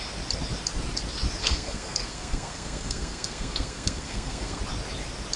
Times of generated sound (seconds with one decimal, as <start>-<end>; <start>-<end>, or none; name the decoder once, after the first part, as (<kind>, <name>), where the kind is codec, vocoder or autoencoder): 1.4-4.6 (codec, SNAC)